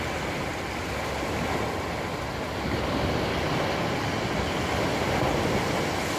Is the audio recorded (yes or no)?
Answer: yes